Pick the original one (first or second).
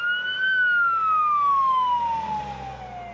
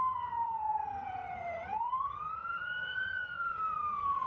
first